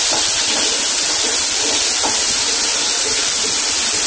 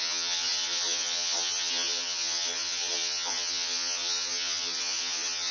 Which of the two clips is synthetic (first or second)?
second